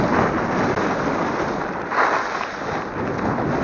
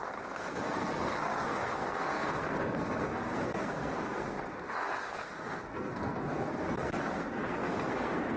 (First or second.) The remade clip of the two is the second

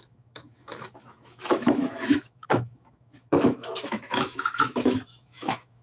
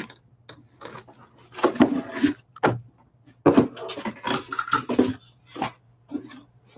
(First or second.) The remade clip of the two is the first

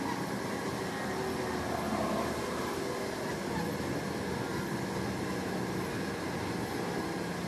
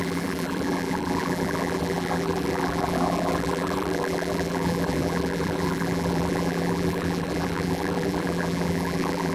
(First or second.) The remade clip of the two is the second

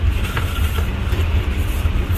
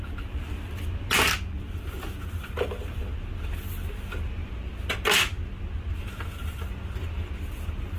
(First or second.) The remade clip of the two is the first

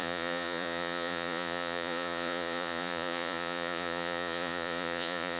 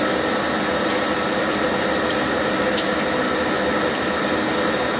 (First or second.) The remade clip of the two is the first